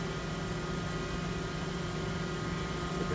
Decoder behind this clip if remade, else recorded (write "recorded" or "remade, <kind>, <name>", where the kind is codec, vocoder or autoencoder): recorded